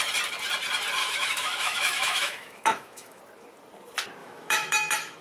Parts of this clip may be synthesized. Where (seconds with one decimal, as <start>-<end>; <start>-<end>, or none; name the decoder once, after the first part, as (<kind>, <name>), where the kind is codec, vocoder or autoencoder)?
1.0-3.2 (autoencoder, DAC-VAE); 4.2-5.2